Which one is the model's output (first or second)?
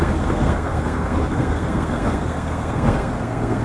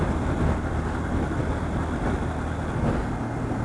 first